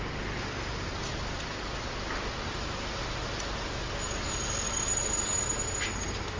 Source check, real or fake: real